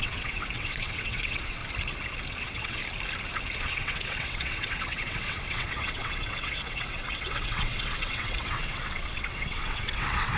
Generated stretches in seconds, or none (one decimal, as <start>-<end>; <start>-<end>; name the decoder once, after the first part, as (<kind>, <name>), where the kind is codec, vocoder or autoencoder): 0.0-1.6 (vocoder, WaveNeXt); 2.4-2.8; 3.7-10.4